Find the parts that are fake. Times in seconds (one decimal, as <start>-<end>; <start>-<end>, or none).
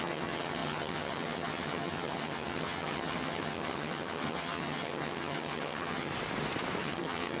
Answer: 0.0-6.1; 6.8-7.4